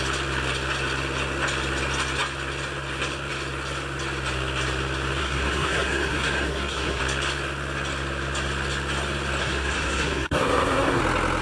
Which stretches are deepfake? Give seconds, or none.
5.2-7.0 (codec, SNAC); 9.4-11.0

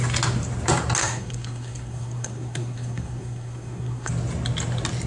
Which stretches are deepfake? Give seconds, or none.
1.0-4.1 (codec, SNAC)

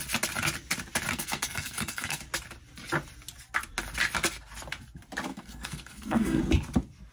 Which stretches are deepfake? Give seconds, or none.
1.1-2.2 (codec, SNAC); 5.3-6.4